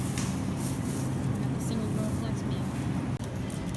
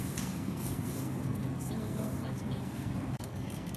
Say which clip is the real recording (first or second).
first